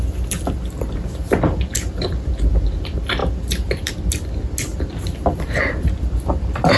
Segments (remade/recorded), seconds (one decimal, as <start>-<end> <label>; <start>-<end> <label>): 0.0-1.7 recorded; 1.7-2.3 remade; 2.3-3.2 recorded; 3.2-3.9 remade; 3.9-4.7 recorded; 4.7-6.8 remade